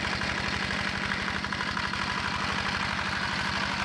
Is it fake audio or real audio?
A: real